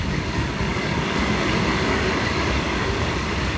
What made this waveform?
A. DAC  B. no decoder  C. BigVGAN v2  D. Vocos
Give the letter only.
A